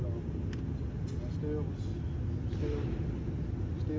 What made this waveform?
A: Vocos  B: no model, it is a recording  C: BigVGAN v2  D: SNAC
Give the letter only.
B